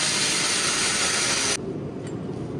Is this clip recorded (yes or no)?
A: yes